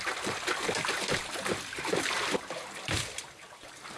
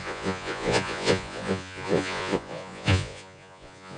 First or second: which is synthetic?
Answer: second